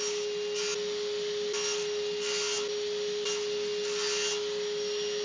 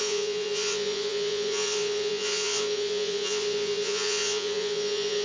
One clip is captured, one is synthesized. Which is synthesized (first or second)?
second